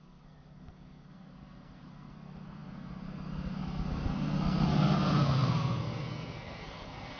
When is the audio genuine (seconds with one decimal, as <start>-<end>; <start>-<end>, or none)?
none